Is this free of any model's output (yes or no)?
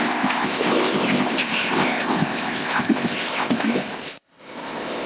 no